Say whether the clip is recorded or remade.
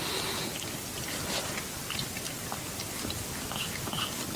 recorded